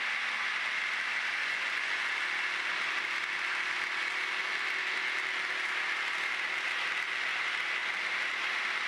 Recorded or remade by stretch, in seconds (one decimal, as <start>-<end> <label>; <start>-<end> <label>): 0.0-1.4 recorded; 1.4-2.1 remade; 2.1-8.9 recorded